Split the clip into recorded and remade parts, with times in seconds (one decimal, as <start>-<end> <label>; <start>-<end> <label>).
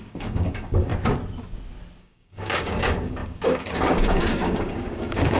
0.0-0.9 remade; 0.9-2.0 recorded; 2.0-5.4 remade